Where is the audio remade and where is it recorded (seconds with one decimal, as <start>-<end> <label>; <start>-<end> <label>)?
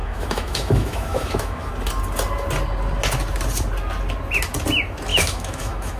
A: 0.0-1.7 remade; 1.7-5.1 recorded; 5.1-6.0 remade